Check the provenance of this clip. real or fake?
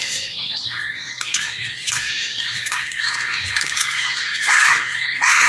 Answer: fake